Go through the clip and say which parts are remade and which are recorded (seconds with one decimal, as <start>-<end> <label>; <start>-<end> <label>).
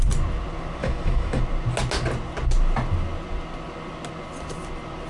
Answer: 0.0-0.8 recorded; 0.8-1.4 remade; 1.4-5.1 recorded